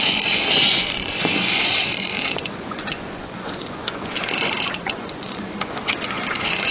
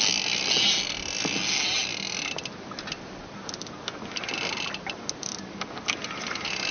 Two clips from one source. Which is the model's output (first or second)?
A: first